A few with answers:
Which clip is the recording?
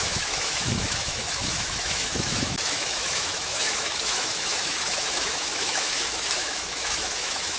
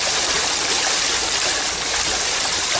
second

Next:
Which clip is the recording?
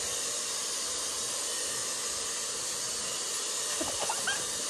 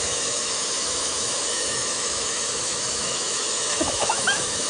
first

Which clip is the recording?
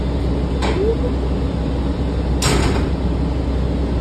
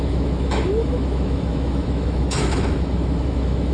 first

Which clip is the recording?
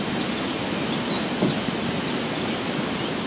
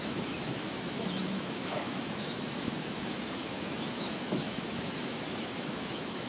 first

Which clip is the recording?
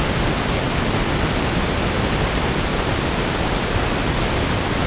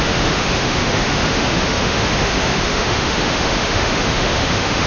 first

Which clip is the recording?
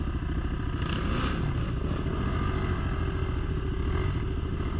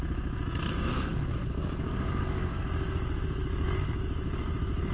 first